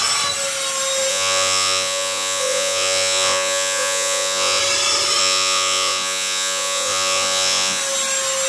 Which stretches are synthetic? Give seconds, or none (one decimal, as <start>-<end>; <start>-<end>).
1.1-4.6; 5.2-7.8